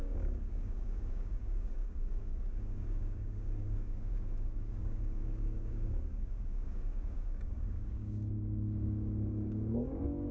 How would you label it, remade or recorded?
remade